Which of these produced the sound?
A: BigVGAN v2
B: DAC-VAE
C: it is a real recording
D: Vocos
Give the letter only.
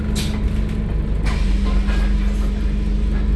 C